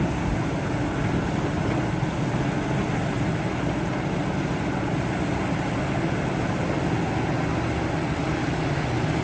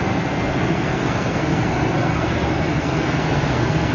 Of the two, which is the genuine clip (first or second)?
first